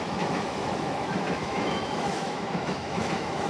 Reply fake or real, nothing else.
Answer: fake